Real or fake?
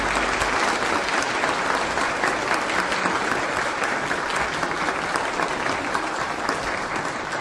real